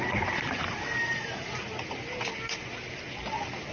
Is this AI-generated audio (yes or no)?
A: no